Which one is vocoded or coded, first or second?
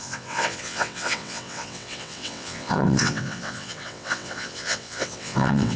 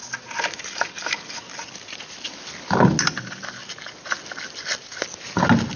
first